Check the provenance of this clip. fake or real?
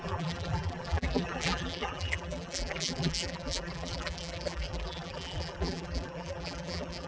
fake